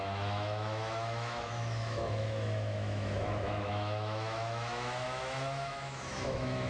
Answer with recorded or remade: remade